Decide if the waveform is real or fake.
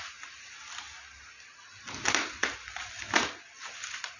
real